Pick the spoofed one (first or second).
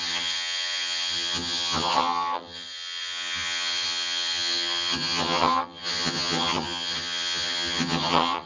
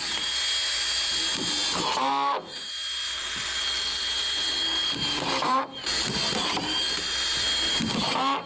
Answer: first